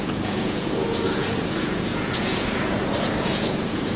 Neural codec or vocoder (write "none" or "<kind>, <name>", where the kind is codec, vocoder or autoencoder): vocoder, Vocos